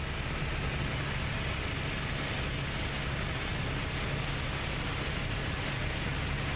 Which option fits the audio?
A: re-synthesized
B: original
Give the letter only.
B